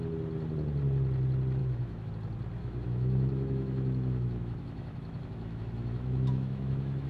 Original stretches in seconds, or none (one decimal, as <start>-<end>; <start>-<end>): 0.0-1.6; 2.1-2.6

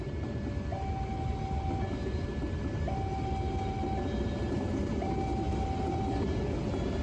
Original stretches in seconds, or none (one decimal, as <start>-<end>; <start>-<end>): 0.0-7.0

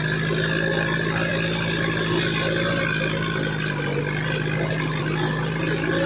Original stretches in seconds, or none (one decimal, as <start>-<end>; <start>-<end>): 0.0-6.1